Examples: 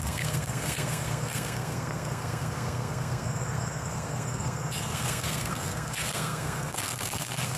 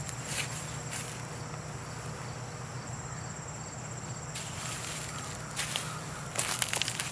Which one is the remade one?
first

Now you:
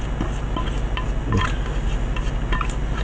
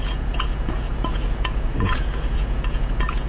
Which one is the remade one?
second